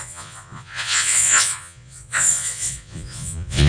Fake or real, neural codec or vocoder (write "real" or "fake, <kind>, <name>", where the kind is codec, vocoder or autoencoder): fake, vocoder, Vocos